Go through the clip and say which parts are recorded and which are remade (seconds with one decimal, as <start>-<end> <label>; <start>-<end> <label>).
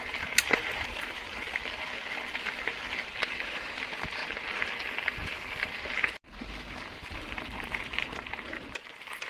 0.0-1.6 remade; 1.6-3.2 recorded; 3.2-4.2 remade; 4.2-6.2 recorded; 6.2-9.3 remade